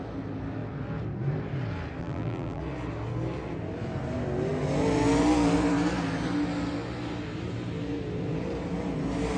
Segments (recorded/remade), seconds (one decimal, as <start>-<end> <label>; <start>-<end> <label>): 0.0-2.0 recorded; 2.0-2.6 remade; 2.6-9.4 recorded

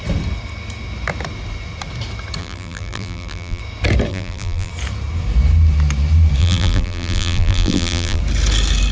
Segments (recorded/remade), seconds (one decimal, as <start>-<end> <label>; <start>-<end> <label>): 0.0-2.4 recorded; 2.4-3.6 remade; 3.6-4.1 recorded; 4.1-4.7 remade; 4.7-6.4 recorded; 6.4-8.2 remade; 8.2-8.9 recorded

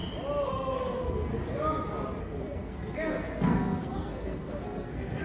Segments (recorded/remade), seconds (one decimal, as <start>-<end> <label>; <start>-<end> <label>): 0.0-0.5 recorded; 0.5-1.3 remade; 1.3-2.2 recorded; 2.2-5.2 remade

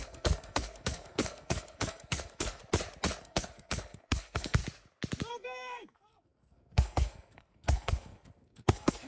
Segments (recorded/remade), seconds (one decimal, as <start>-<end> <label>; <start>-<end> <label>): 0.0-2.6 remade; 2.6-3.2 recorded; 3.2-4.6 remade; 4.6-5.3 recorded; 5.3-9.1 remade

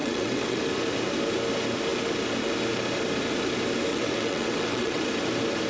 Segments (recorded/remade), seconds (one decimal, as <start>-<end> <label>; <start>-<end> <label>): 0.0-0.6 remade; 0.6-3.9 recorded; 3.9-5.0 remade; 5.0-5.7 recorded

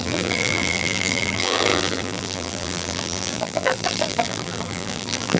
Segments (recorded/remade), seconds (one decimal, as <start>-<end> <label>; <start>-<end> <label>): 0.0-5.4 remade

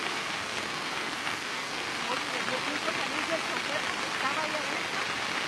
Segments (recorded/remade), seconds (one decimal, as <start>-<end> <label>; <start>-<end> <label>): 0.0-2.0 remade; 2.0-5.5 recorded